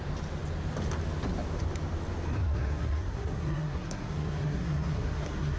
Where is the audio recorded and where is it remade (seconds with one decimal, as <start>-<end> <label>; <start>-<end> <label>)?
0.0-2.4 recorded; 2.4-5.6 remade